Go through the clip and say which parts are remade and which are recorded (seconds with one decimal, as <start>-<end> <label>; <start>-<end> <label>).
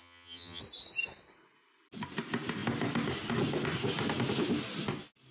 0.0-0.6 remade; 0.6-5.3 recorded